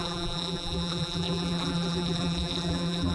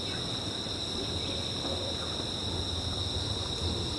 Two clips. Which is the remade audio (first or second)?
first